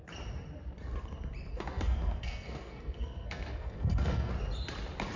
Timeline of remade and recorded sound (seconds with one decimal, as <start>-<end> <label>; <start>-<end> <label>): 0.0-1.5 recorded; 1.5-4.3 remade; 4.3-5.2 recorded